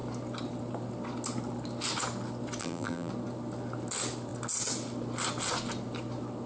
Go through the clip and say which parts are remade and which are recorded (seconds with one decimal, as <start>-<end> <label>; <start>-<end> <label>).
0.0-2.6 recorded; 2.6-3.1 remade; 3.1-6.5 recorded